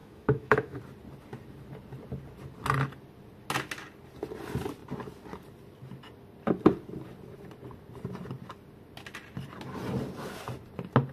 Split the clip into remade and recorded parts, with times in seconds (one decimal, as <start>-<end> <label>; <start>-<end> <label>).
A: 0.0-0.8 remade; 0.8-11.1 recorded